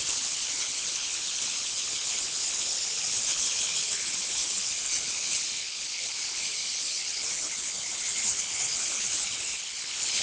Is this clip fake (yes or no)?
yes